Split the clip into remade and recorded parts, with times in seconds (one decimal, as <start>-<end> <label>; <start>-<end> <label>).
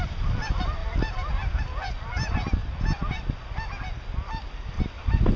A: 0.0-5.4 recorded